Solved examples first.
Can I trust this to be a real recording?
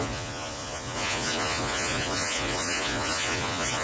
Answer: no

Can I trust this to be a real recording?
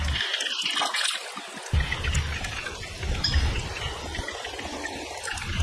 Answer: yes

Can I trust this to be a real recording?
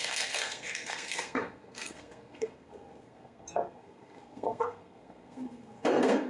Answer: no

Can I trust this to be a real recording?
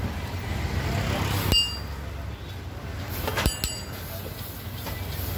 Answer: yes